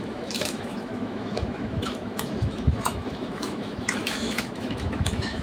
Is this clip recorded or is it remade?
remade